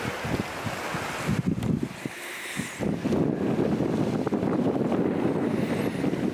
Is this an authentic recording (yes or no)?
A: yes